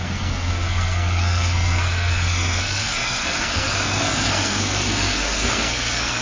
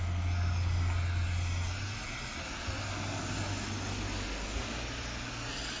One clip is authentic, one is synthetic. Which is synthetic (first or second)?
first